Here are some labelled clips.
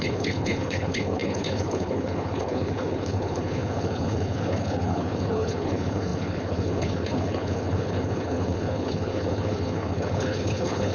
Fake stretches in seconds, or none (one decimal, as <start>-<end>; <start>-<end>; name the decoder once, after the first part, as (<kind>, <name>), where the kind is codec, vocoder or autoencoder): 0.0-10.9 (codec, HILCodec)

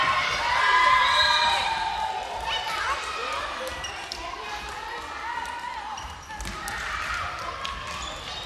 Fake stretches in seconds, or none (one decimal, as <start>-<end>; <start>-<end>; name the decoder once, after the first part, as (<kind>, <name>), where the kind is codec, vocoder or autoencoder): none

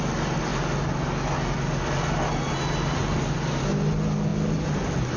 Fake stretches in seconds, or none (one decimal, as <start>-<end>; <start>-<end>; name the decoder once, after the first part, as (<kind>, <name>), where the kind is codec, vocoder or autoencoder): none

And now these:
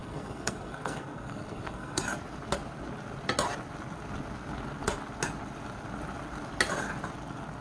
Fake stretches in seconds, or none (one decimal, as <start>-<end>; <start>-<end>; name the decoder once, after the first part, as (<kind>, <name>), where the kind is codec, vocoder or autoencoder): 0.0-2.0 (codec, SNAC)

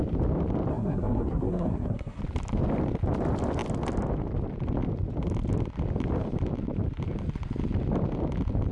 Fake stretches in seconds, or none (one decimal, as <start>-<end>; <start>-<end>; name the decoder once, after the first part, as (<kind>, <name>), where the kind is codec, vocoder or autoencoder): 0.7-2.2 (codec, SNAC)